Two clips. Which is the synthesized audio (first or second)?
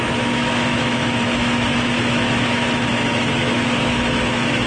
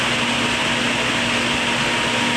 first